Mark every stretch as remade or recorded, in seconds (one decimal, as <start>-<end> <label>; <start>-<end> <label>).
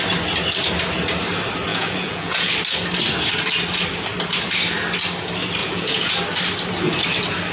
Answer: 0.0-1.7 recorded; 1.7-2.5 remade; 2.5-5.6 recorded; 5.6-6.1 remade; 6.1-7.5 recorded